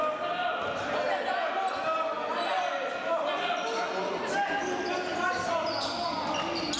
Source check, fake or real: real